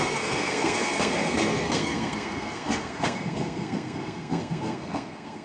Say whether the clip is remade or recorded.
remade